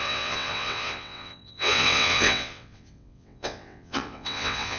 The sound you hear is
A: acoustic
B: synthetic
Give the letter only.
B